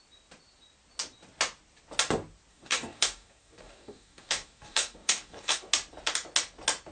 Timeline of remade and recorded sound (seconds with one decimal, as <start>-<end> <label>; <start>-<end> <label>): 0.0-2.5 recorded; 2.5-5.7 remade; 5.7-6.9 recorded